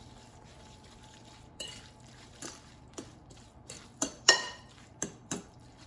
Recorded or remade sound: remade